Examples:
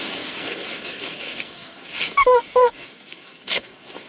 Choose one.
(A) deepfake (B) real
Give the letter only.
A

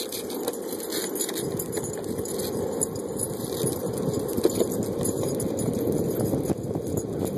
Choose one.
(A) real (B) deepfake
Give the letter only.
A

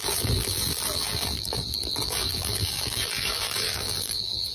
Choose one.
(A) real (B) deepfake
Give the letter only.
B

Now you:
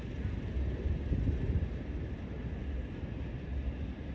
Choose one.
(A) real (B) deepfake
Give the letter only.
A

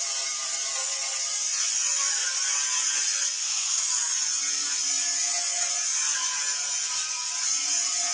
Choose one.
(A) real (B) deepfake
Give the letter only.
B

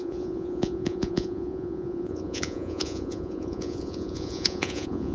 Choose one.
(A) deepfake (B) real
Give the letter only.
A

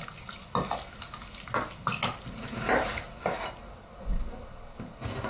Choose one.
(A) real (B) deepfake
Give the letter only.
A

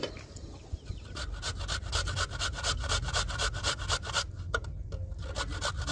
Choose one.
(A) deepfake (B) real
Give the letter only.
B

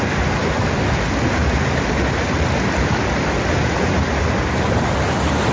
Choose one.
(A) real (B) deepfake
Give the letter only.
A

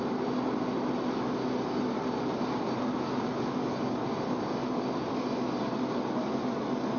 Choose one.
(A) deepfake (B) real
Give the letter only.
B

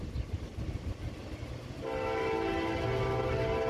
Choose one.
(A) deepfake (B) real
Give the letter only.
B